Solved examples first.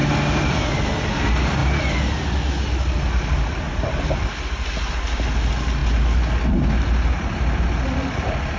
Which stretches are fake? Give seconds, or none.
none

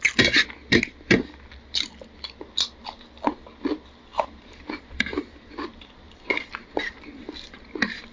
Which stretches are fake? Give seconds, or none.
4.1-6.9 (vocoder, BigVGAN v2)

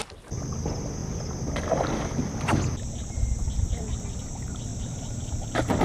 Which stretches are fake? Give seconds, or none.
4.7-5.8 (vocoder, BigVGAN v2)

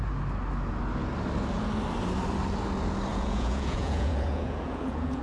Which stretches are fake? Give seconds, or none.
3.1-5.2 (vocoder, Vocos)

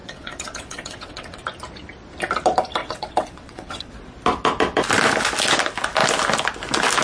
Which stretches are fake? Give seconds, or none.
0.0-1.4 (vocoder, WaveNeXt); 2.8-3.9